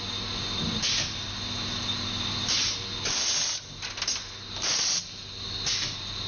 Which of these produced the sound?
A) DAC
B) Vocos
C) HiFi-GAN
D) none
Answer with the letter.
D